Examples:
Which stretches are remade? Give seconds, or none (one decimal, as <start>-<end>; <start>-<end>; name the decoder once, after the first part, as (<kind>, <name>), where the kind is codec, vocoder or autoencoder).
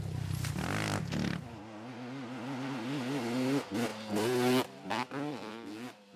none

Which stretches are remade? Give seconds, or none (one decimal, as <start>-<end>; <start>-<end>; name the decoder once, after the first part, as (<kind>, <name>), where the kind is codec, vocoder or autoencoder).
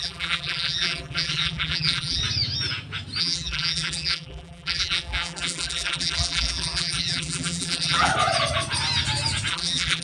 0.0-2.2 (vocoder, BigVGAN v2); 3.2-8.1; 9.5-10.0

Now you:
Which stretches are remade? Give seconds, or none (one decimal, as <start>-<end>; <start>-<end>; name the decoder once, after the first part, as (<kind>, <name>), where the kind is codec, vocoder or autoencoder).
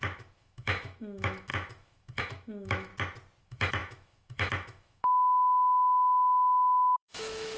0.0-2.9 (autoencoder, DAC-VAE); 3.4-7.6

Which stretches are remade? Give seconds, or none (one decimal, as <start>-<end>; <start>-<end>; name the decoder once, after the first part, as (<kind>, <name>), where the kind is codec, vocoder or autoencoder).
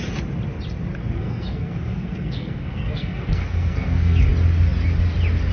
1.0-4.3 (codec, SNAC)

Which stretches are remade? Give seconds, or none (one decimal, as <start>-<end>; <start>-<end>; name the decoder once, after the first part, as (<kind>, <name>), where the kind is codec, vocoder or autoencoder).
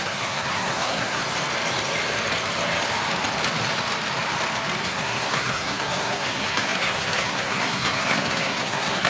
0.0-1.2 (codec, SNAC); 4.8-9.1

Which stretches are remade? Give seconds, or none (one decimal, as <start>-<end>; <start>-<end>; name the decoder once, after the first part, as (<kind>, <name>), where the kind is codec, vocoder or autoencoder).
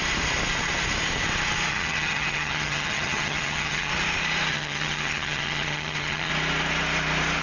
1.7-3.9 (vocoder, HiFi-GAN); 4.5-6.3